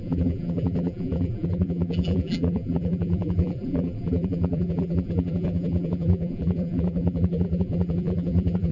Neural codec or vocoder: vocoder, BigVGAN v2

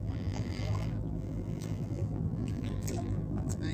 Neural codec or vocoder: vocoder, BigVGAN v2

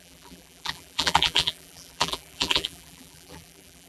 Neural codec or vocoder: vocoder, BigVGAN v2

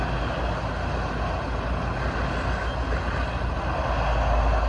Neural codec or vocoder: none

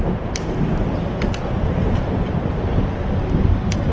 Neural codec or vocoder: none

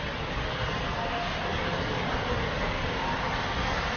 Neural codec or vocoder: none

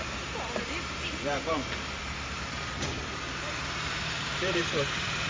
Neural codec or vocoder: vocoder, BigVGAN v2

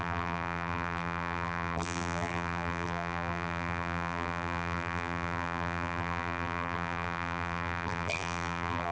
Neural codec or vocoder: vocoder, BigVGAN v2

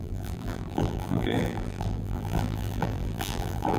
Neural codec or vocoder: vocoder, BigVGAN v2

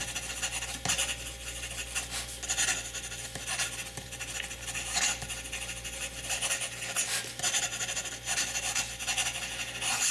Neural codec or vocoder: none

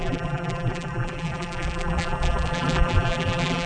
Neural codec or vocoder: vocoder, BigVGAN v2